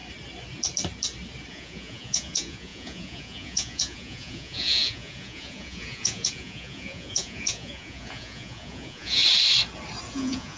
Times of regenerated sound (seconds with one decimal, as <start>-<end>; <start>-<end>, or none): 1.5-9.2; 10.1-10.6